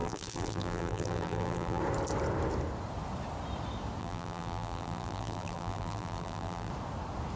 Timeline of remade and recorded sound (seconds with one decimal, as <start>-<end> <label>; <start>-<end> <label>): 0.0-1.8 remade; 1.8-4.0 recorded; 4.0-6.7 remade; 6.7-7.4 recorded